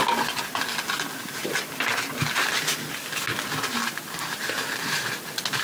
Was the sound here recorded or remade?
recorded